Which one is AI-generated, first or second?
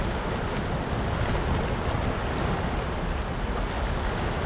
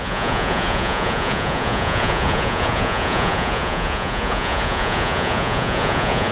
second